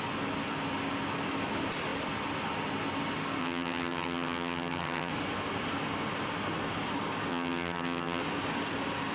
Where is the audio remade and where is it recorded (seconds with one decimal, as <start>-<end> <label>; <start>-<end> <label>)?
0.0-3.4 recorded; 3.4-5.1 remade; 5.1-7.3 recorded; 7.3-8.2 remade; 8.2-9.1 recorded